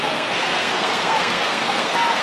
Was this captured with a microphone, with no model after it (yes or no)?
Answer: no